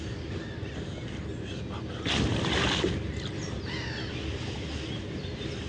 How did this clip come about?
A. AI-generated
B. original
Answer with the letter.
B